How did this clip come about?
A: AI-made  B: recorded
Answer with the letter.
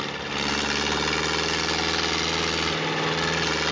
B